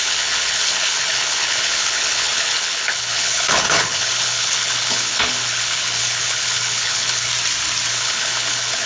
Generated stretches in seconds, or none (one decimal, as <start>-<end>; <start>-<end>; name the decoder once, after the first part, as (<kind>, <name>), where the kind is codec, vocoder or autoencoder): 0.0-7.3 (codec, HILCodec); 7.9-8.9